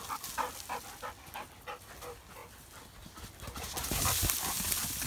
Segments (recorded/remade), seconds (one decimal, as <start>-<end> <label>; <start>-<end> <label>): 0.0-5.1 recorded